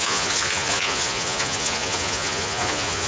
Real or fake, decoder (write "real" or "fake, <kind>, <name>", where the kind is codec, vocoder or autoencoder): fake, vocoder, Vocos